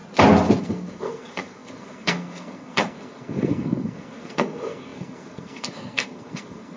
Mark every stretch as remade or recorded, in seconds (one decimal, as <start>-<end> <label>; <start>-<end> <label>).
0.0-0.6 recorded; 0.6-6.8 remade